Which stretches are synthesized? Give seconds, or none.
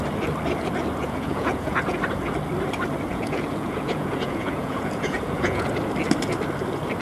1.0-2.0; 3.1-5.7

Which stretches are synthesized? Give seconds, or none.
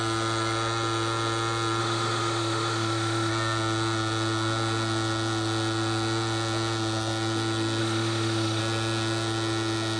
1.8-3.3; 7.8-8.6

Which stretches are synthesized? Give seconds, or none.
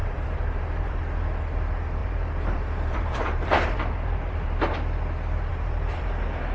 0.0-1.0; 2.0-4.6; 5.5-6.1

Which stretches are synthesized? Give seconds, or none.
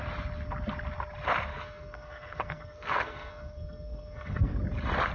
1.5-4.6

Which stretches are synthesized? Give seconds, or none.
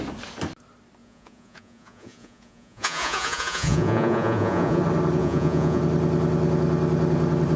1.0-4.8; 5.2-5.8